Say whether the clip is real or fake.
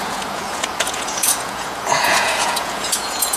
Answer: fake